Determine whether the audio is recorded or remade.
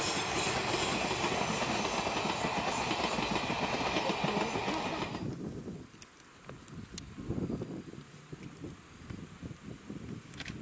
recorded